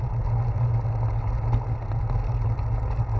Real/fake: real